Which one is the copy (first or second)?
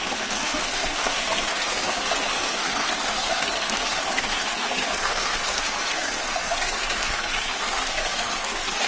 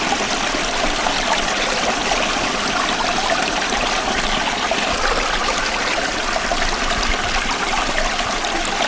first